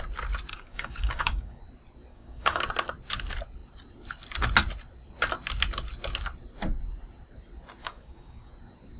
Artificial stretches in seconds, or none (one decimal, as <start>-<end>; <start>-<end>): 0.5-1.6; 2.1-2.6; 7.8-8.5